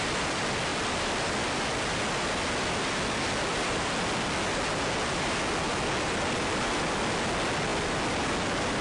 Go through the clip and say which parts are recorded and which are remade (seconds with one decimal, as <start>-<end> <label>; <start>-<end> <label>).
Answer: 0.0-8.8 recorded